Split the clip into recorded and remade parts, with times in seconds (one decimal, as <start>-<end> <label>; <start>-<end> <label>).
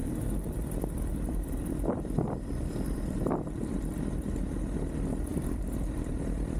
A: 0.0-4.0 remade; 4.0-5.3 recorded; 5.3-6.6 remade